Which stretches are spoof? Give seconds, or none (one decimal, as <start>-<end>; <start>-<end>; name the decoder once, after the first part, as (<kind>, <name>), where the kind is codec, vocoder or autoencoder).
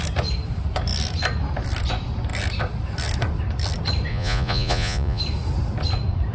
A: 4.1-5.2 (vocoder, Vocos)